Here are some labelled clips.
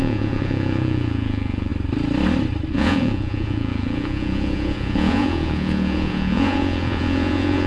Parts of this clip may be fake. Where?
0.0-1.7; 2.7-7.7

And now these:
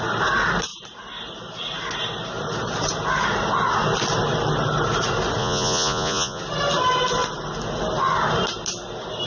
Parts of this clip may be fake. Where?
5.4-6.4

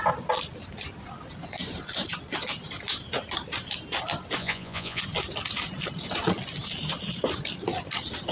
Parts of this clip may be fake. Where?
4.4-5.0

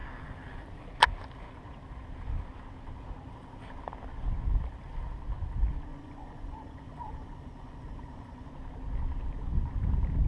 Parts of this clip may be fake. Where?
5.9-8.5